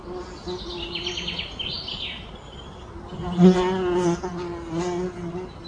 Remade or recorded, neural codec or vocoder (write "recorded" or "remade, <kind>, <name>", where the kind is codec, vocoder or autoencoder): recorded